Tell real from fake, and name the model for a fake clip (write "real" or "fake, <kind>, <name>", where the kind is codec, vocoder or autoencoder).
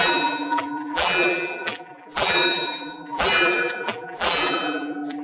fake, vocoder, BigVGAN v2